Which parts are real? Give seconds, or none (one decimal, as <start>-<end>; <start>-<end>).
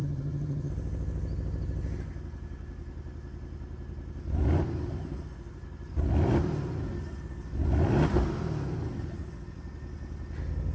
0.7-10.7